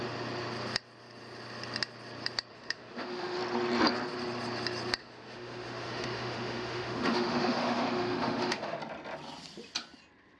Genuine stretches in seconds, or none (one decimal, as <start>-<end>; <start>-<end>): 0.0-2.5; 3.4-5.0; 8.8-10.4